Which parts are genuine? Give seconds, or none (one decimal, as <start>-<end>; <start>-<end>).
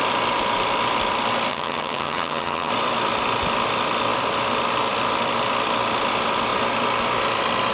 0.0-1.5; 2.7-7.7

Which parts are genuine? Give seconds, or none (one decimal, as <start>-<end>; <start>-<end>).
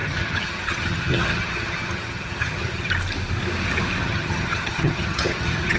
2.9-4.0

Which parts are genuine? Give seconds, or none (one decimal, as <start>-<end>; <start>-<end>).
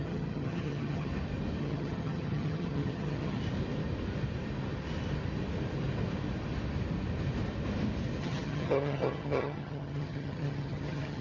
1.1-1.6; 3.4-8.2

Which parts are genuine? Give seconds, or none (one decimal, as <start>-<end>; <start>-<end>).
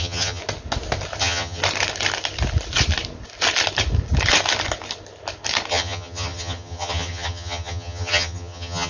0.4-1.2; 1.6-5.7